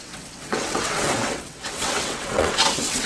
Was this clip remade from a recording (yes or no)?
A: yes